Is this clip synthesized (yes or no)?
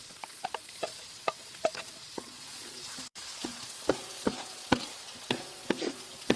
yes